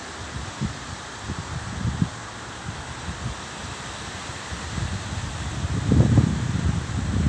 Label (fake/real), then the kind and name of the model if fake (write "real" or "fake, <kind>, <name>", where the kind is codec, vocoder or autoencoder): real